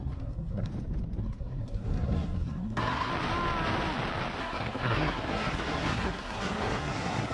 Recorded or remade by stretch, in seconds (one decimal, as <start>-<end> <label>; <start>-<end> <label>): 0.0-0.7 remade; 0.7-1.2 recorded; 1.2-3.1 remade; 3.1-4.4 recorded; 4.4-7.3 remade